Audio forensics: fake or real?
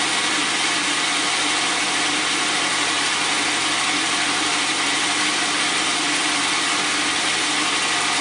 real